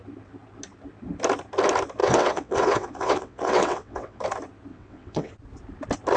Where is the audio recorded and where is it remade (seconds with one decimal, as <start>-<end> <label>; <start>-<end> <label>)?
0.0-2.0 recorded; 2.0-4.2 remade; 4.2-4.7 recorded; 4.7-5.3 remade; 5.3-6.2 recorded

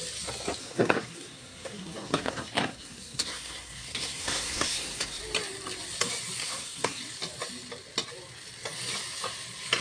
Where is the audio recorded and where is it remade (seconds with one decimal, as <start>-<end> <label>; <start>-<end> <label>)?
0.0-0.6 recorded; 0.6-5.2 remade; 5.2-6.4 recorded; 6.4-7.0 remade; 7.0-9.8 recorded

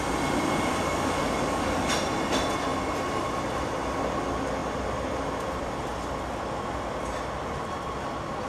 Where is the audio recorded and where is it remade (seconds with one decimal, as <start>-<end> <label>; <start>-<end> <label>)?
0.0-0.7 recorded; 0.7-1.9 remade; 1.9-8.5 recorded

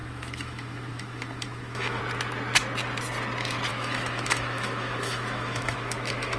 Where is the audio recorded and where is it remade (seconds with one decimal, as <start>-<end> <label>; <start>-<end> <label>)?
0.0-2.0 remade; 2.0-3.7 recorded; 3.7-6.4 remade

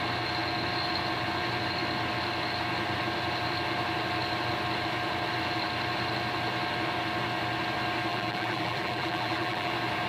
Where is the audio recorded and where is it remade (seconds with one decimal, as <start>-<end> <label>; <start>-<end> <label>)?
0.0-8.1 recorded; 8.1-9.7 remade; 9.7-10.1 recorded

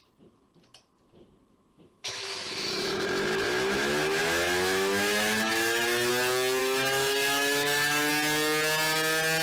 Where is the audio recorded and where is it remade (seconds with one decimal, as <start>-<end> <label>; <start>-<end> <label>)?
0.0-1.7 recorded; 1.7-6.1 remade; 6.1-6.6 recorded; 6.6-8.1 remade; 8.1-9.4 recorded

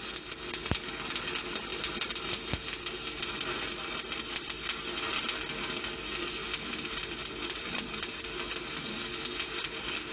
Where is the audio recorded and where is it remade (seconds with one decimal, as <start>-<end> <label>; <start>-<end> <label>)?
0.0-10.1 recorded

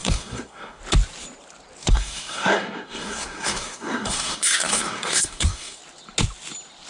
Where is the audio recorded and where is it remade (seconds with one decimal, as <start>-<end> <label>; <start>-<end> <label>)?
0.0-0.8 remade; 0.8-1.8 recorded; 1.8-5.8 remade; 5.8-6.9 recorded